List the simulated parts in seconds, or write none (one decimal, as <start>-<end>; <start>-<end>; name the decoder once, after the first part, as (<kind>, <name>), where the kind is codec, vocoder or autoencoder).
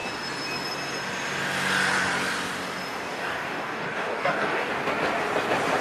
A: 3.1-4.7 (codec, DAC)